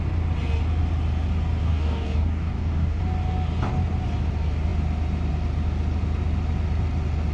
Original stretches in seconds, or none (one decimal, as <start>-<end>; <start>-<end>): 0.0-1.6; 3.0-7.3